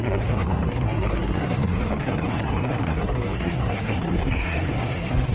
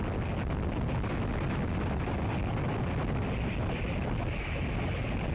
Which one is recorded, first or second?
second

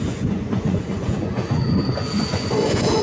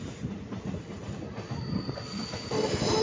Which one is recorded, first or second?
second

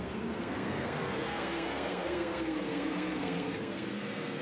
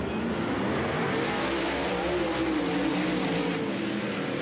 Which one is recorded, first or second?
second